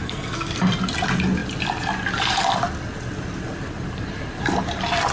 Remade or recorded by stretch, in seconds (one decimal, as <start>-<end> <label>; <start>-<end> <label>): 0.0-0.6 remade; 0.6-5.1 recorded